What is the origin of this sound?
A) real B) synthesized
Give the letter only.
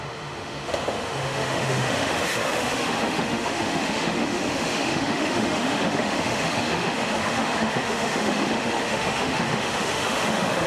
B